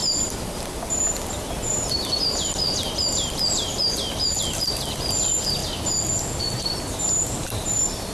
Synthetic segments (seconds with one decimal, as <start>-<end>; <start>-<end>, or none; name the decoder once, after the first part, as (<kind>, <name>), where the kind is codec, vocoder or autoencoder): 0.0-5.6 (vocoder, BigVGAN v2); 6.4-8.1